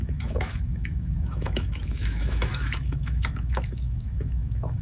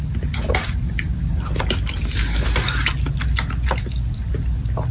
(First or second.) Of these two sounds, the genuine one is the second